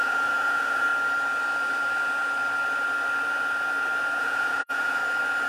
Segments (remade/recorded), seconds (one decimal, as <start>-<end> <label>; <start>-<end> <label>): 0.0-0.9 remade; 0.9-4.2 recorded; 4.2-5.0 remade; 5.0-5.5 recorded